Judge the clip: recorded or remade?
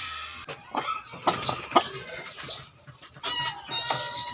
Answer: recorded